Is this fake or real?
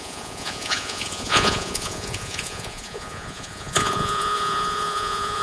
fake